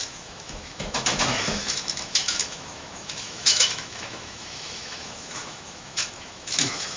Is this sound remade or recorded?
remade